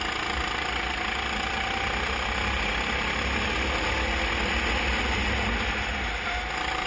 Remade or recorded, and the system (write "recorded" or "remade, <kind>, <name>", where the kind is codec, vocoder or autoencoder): recorded